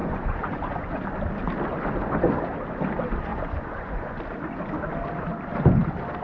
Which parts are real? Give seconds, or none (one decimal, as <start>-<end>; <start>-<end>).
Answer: 1.0-3.3; 4.2-6.2